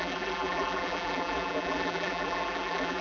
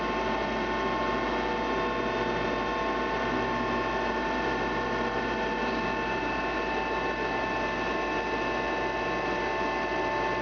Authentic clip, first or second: second